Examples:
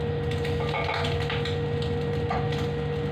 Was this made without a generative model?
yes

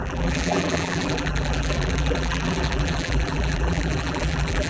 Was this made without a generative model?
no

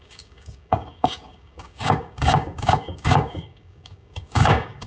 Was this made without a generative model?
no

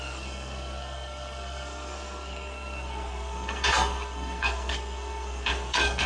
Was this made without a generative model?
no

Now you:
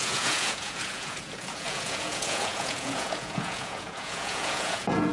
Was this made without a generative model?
no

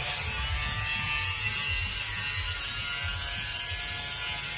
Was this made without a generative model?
yes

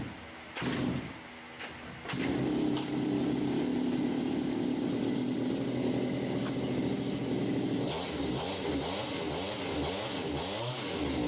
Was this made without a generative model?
yes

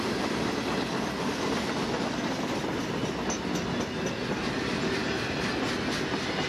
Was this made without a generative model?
yes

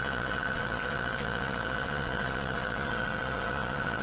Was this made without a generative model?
no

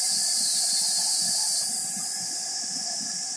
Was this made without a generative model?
yes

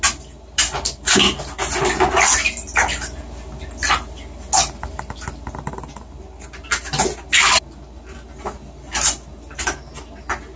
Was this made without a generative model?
yes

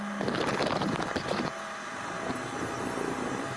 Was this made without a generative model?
yes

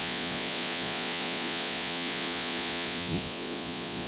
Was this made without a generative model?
no